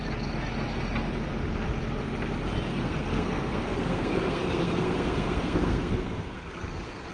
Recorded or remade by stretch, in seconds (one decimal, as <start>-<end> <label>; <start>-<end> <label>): 0.0-2.7 recorded; 2.7-7.1 remade